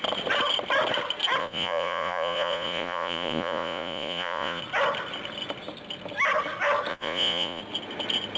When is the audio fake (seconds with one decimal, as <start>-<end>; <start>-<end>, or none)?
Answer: 1.4-4.6; 6.9-7.6